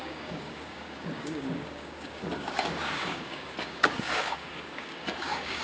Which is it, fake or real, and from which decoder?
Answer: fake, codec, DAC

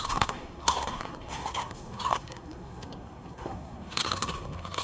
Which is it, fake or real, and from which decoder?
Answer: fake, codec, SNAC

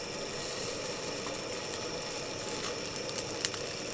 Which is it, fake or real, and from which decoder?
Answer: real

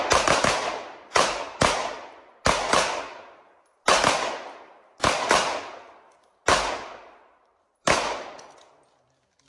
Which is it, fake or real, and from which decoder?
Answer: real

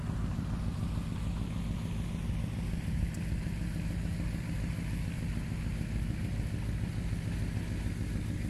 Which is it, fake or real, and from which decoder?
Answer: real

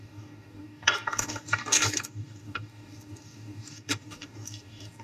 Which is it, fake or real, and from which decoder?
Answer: fake, codec, DAC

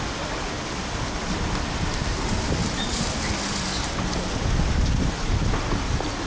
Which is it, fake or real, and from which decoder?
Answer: real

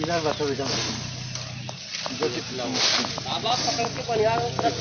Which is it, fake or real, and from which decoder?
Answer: real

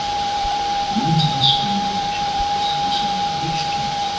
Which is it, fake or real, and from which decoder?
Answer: fake, vocoder, BigVGAN v2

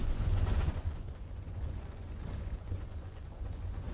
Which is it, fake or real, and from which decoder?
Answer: fake, vocoder, Vocos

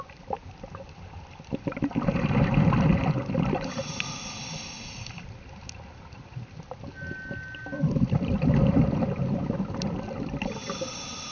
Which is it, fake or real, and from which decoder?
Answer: real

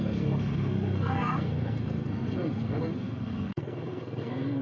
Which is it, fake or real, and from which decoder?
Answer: fake, codec, SNAC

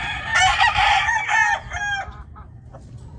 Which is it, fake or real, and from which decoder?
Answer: real